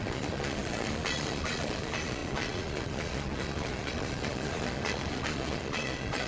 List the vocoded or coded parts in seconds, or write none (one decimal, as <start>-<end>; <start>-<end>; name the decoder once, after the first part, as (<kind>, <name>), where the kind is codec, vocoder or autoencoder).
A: 0.0-6.3 (vocoder, Vocos)